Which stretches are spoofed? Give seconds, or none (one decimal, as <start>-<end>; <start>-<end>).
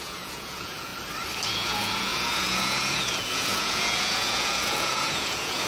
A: 0.0-0.9; 1.5-5.7